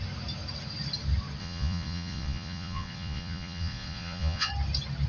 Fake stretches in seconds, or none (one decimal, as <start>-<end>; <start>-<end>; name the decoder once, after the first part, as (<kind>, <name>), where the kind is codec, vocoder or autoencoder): 1.4-4.5 (vocoder, Vocos)